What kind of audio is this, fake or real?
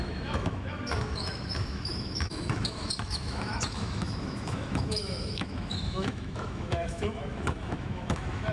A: fake